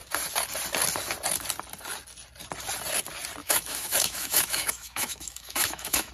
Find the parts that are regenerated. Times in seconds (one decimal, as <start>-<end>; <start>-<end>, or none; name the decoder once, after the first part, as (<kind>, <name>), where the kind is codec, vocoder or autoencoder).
3.4-6.1 (autoencoder, DAC-VAE)